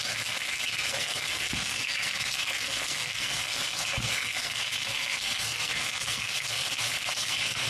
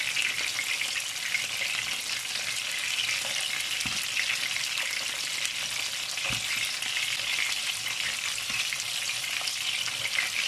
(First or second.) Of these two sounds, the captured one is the second